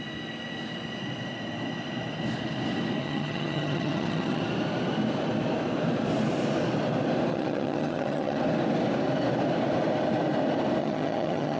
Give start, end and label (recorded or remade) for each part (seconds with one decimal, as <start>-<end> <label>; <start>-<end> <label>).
0.0-3.0 recorded; 3.0-4.4 remade; 4.4-7.3 recorded; 7.3-8.4 remade; 8.4-10.8 recorded; 10.8-11.6 remade